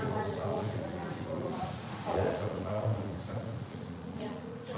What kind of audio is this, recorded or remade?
remade